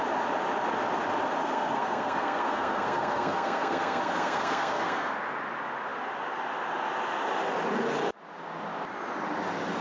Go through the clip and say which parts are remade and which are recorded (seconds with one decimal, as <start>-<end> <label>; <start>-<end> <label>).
0.0-1.4 recorded; 1.4-5.1 remade; 5.1-9.8 recorded

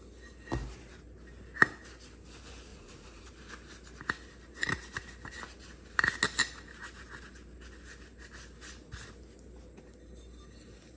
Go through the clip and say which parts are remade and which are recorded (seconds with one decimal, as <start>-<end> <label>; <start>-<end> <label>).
0.0-2.7 recorded; 2.7-3.2 remade; 3.2-11.0 recorded

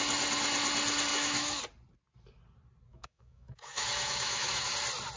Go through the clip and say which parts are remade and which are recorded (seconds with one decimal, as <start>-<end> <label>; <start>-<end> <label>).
0.0-1.1 recorded; 1.1-1.6 remade; 1.6-2.9 recorded; 2.9-4.7 remade; 4.7-5.2 recorded

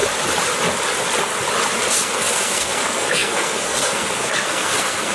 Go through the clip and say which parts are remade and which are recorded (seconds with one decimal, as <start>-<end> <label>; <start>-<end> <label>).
0.0-1.8 recorded; 1.8-5.1 remade

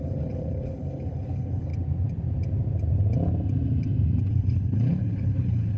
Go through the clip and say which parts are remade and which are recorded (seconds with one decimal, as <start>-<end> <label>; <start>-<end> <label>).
0.0-1.7 remade; 1.7-4.3 recorded; 4.3-5.8 remade

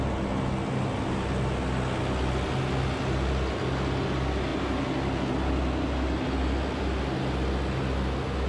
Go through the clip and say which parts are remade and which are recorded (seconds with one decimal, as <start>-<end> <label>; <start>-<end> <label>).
0.0-8.5 recorded